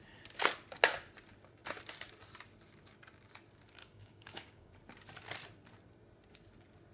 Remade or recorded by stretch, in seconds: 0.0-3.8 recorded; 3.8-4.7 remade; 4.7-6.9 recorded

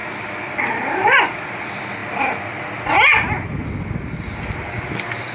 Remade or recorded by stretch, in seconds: 0.0-5.3 recorded

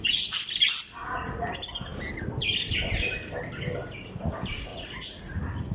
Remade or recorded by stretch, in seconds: 0.0-1.0 recorded; 1.0-1.5 remade; 1.5-4.7 recorded; 4.7-5.7 remade

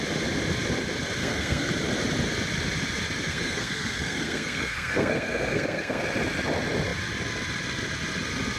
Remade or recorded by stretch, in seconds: 0.0-1.2 recorded; 1.2-1.7 remade; 1.7-3.3 recorded; 3.3-6.0 remade; 6.0-8.6 recorded

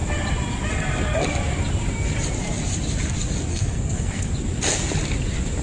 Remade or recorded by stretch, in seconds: 0.0-3.5 recorded; 3.5-4.3 remade; 4.3-5.6 recorded

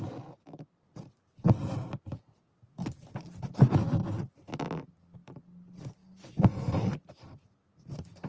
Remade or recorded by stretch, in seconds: 0.0-8.3 recorded

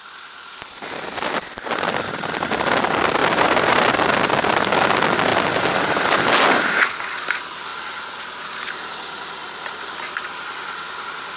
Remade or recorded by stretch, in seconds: 0.0-3.2 recorded; 3.2-3.8 remade; 3.8-9.4 recorded; 9.4-10.2 remade; 10.2-11.4 recorded